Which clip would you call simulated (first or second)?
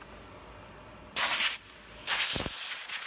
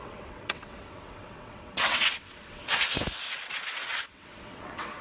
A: second